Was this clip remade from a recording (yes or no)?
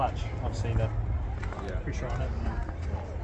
no